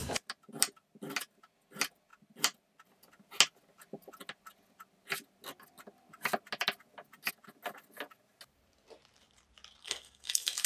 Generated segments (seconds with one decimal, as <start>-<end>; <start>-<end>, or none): 9.8-10.7